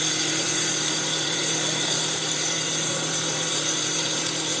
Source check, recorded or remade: remade